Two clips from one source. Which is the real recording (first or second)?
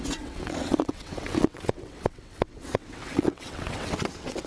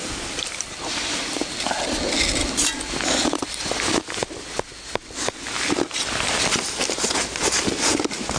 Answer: second